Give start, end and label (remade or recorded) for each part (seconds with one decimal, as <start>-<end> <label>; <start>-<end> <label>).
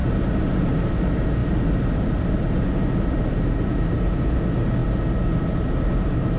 0.0-6.4 recorded